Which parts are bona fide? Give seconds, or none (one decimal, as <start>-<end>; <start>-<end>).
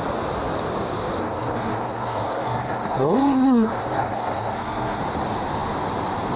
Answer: 0.0-1.2; 5.0-6.4